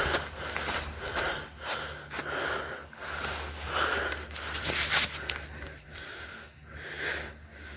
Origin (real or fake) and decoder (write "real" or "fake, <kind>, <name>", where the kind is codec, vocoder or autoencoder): real